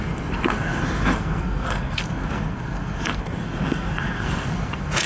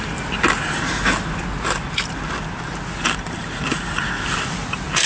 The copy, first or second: first